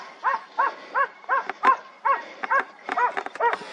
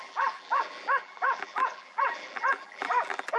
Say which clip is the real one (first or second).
first